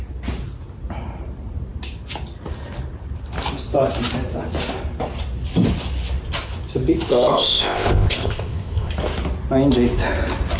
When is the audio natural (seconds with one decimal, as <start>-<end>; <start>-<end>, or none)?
0.0-7.1; 8.9-10.6

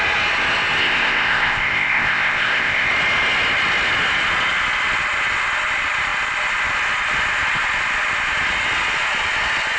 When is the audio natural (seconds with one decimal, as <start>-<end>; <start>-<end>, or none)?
0.0-0.8; 2.9-9.8

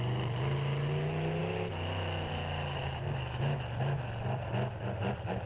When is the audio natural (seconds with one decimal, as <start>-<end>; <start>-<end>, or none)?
0.0-5.5

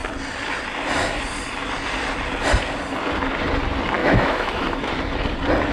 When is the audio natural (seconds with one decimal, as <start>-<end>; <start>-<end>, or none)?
0.0-4.0; 4.9-5.7

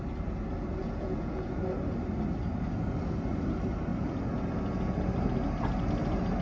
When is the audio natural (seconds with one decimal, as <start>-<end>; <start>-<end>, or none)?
0.0-0.8; 1.6-6.4

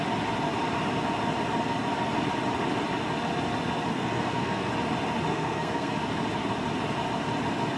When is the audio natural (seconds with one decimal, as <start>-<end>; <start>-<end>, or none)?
0.0-3.9; 4.7-5.3; 5.9-7.8

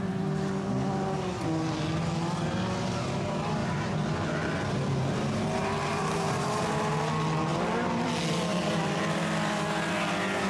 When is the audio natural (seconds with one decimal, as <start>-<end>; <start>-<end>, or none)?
0.0-3.6; 6.7-7.5; 8.1-8.5; 9.0-10.5